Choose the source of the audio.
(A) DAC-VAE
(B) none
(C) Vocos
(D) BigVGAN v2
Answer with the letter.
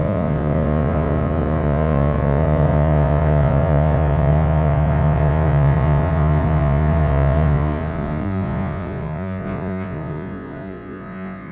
C